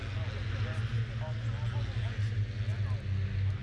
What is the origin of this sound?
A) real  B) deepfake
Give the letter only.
A